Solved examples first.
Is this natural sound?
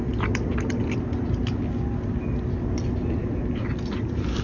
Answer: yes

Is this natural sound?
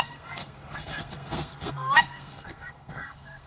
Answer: no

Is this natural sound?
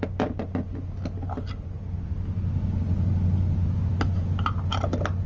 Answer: yes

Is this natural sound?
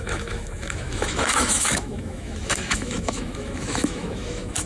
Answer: no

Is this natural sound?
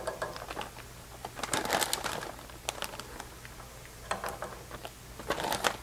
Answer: yes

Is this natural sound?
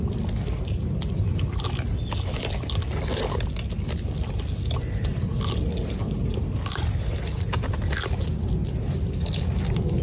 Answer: yes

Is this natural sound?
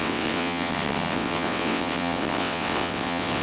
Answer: no